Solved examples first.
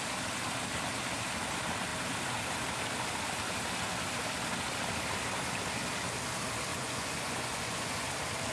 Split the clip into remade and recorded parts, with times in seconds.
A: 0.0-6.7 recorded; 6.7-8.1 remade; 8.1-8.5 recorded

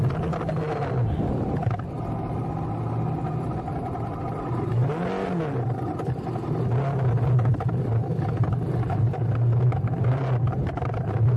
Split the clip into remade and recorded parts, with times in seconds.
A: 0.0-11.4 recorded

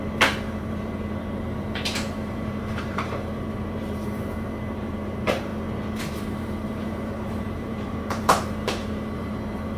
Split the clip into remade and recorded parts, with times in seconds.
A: 0.0-5.5 remade; 5.5-6.0 recorded; 6.0-9.8 remade